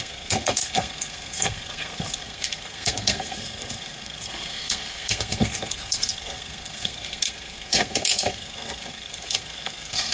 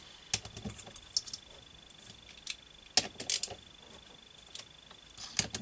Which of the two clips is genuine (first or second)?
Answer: second